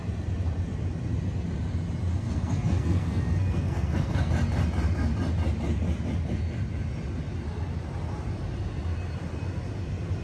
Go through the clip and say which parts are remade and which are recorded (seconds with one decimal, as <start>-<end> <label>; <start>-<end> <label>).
0.0-2.1 recorded; 2.1-4.3 remade; 4.3-10.2 recorded

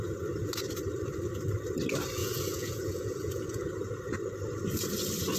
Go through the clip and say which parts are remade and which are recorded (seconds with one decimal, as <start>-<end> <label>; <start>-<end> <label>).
0.0-2.2 recorded; 2.2-3.6 remade; 3.6-5.4 recorded

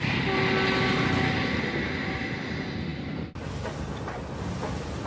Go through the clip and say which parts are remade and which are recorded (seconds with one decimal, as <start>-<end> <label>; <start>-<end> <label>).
0.0-5.1 recorded

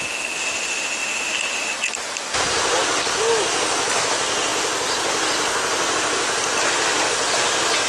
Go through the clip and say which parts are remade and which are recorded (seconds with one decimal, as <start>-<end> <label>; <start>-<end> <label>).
0.0-7.9 recorded

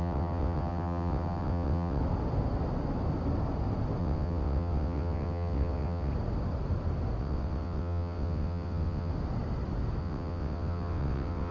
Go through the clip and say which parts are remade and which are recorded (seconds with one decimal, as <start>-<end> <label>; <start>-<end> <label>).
0.0-2.0 remade; 2.0-4.0 recorded; 4.0-6.1 remade; 6.1-7.2 recorded; 7.2-9.1 remade; 9.1-10.0 recorded; 10.0-11.5 remade

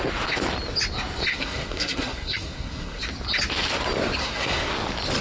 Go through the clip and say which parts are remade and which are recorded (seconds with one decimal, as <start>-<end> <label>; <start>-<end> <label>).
0.0-1.3 recorded; 1.3-3.0 remade; 3.0-4.2 recorded; 4.2-4.7 remade; 4.7-5.2 recorded

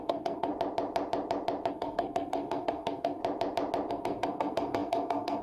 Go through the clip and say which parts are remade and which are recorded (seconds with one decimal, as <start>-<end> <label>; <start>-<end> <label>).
0.0-0.5 remade; 0.5-1.7 recorded; 1.7-3.2 remade; 3.2-3.9 recorded; 3.9-5.4 remade

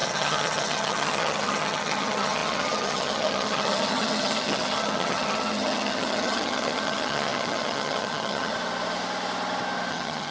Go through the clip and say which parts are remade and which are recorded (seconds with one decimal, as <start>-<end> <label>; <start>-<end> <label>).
0.0-8.5 remade; 8.5-9.9 recorded; 9.9-10.3 remade